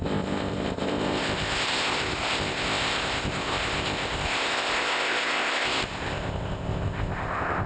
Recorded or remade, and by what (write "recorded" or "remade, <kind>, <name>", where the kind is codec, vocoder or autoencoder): remade, codec, ZipCodec